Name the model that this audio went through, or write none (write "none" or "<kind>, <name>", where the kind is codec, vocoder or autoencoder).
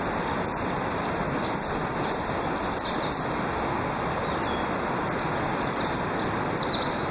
none